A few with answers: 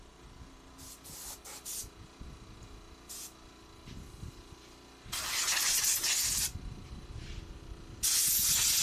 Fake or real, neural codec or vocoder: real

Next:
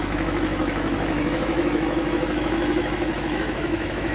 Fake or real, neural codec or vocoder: fake, autoencoder, DAC-VAE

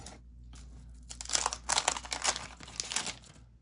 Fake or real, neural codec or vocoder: real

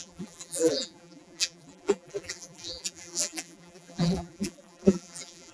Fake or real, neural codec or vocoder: fake, vocoder, BigVGAN v2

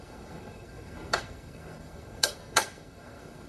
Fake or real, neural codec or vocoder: fake, codec, SNAC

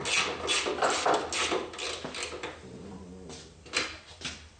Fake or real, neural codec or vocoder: real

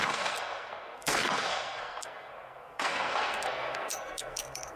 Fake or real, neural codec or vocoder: fake, codec, SNAC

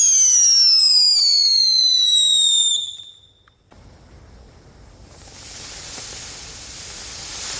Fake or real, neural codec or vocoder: real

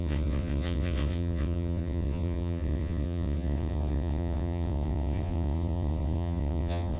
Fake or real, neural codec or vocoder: fake, vocoder, WaveNeXt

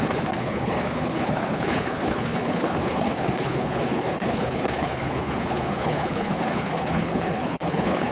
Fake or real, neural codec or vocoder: fake, codec, HILCodec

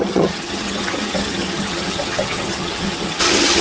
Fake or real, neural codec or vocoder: fake, vocoder, HiFi-GAN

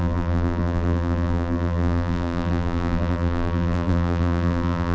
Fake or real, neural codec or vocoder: fake, vocoder, BigVGAN v2